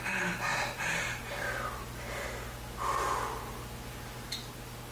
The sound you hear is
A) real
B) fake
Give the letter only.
A